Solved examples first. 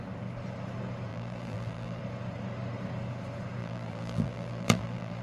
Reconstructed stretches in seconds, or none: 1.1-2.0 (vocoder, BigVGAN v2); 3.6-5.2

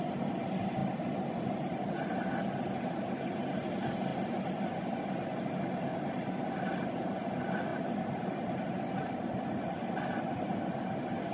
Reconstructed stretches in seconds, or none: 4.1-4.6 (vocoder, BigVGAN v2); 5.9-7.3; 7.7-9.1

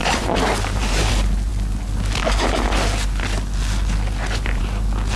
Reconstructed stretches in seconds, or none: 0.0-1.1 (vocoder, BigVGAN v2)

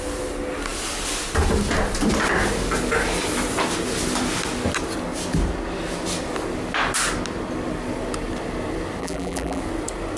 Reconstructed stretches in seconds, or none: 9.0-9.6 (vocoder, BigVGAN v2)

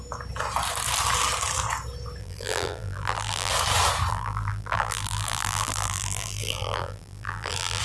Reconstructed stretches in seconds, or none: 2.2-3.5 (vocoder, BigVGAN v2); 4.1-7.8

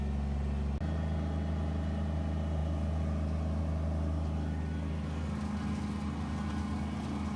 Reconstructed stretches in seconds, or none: none